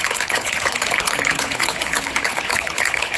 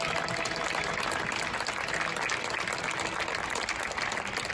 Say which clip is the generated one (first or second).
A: first